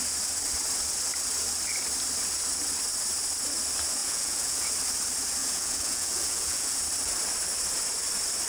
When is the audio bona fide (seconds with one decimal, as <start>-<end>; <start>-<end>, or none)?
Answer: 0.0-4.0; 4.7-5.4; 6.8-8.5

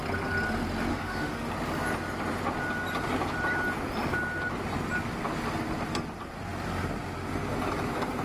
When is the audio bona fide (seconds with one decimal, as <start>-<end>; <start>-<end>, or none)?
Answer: 0.0-0.9; 1.5-8.2

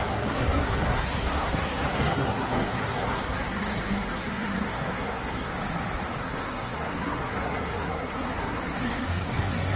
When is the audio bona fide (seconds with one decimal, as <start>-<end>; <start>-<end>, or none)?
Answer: 5.5-6.2

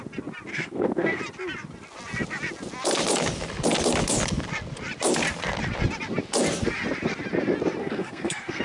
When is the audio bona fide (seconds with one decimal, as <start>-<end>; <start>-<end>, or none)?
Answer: 0.0-0.5; 1.2-7.8

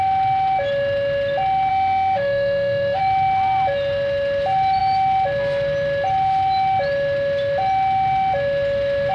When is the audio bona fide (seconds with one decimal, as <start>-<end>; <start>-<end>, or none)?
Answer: 0.0-1.7; 3.0-9.1

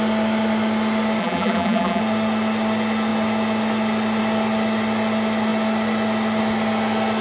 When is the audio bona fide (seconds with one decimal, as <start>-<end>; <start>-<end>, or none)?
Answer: 0.0-1.2; 2.0-7.2

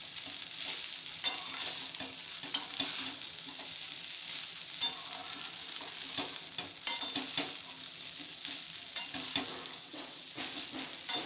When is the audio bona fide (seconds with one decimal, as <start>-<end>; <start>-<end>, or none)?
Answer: 0.0-9.8; 10.4-11.3

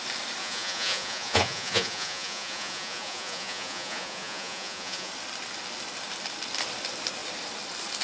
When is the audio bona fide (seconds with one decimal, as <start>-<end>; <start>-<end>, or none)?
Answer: 0.0-0.4; 5.1-8.0